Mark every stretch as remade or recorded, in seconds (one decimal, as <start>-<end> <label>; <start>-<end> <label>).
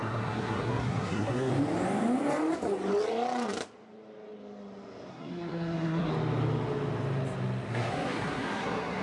0.0-1.5 remade; 1.5-5.1 recorded; 5.1-6.1 remade; 6.1-7.7 recorded; 7.7-9.0 remade